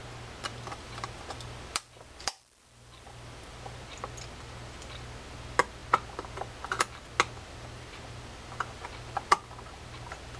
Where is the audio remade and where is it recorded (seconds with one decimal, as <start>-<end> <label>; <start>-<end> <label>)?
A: 0.0-0.5 recorded; 0.5-3.8 remade; 3.8-10.4 recorded